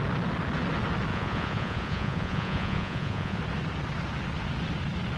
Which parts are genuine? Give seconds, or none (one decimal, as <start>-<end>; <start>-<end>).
0.0-1.1; 3.4-5.2